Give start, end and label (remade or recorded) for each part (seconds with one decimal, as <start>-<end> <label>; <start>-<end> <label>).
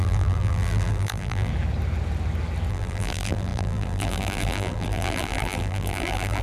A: 0.0-1.5 remade; 1.5-2.7 recorded; 2.7-6.4 remade